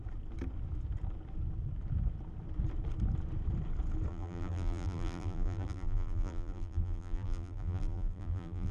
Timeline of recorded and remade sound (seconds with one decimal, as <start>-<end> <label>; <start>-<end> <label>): 0.0-4.1 recorded; 4.1-8.7 remade